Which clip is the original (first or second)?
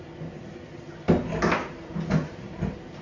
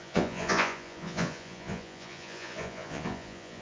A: first